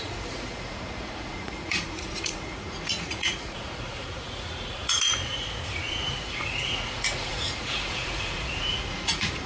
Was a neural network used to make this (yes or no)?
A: yes